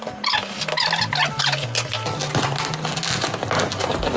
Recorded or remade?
recorded